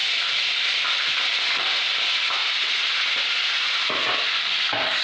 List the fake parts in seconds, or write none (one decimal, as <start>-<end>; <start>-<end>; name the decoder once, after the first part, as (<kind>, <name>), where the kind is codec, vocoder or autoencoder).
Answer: 2.4-3.7 (vocoder, Vocos)